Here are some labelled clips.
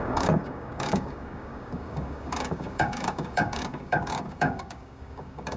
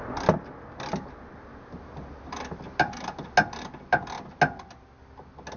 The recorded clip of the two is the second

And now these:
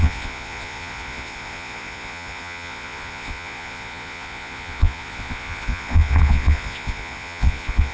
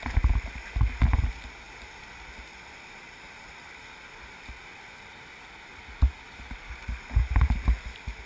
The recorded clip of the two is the second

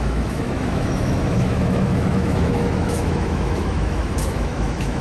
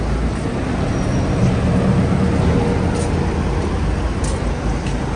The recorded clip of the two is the second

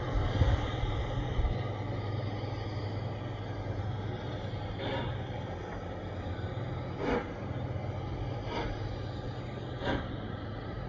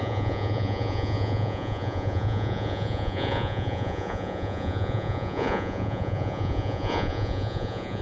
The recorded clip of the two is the first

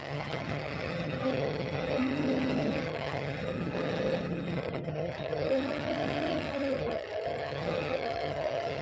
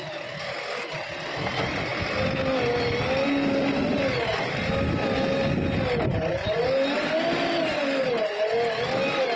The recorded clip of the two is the second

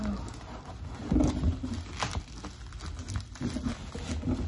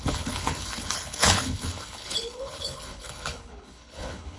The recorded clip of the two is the first